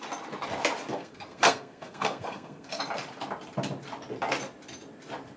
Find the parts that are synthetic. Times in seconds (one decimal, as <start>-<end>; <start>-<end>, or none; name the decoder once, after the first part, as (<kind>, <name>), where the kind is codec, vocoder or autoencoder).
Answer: 0.9-2.8 (codec, SNAC)